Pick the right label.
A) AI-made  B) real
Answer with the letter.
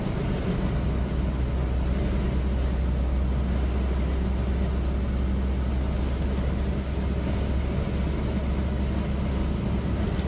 B